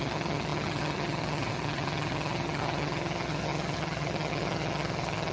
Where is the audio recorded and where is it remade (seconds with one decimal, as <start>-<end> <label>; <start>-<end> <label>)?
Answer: 0.0-5.3 remade